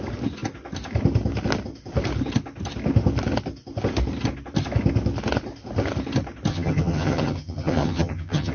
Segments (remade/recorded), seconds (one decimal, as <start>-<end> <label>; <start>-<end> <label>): 0.0-6.5 recorded; 6.5-8.5 remade